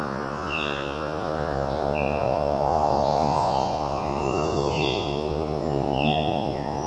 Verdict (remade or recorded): remade